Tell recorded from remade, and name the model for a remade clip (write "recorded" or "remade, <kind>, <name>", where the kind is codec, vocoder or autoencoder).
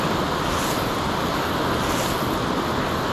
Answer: recorded